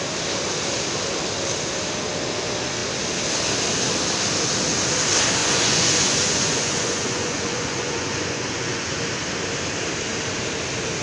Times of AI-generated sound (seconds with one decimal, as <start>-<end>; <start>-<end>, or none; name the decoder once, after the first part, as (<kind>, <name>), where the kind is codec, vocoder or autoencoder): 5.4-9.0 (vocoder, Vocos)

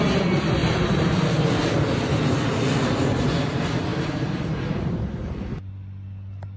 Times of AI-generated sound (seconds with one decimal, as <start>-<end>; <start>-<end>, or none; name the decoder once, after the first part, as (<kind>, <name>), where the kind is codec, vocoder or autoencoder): 0.6-1.3 (vocoder, BigVGAN v2); 3.9-5.3

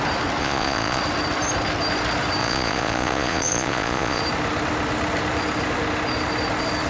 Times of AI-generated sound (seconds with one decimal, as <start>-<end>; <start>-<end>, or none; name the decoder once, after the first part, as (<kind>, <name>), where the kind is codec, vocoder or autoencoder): 0.4-1.0 (vocoder, Vocos); 2.4-4.2